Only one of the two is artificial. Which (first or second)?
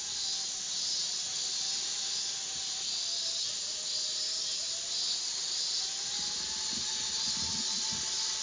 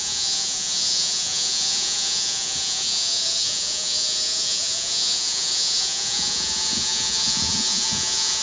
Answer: second